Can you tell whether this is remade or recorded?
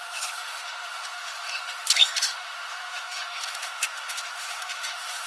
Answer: remade